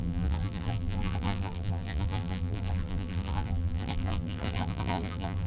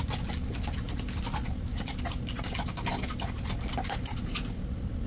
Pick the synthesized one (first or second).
first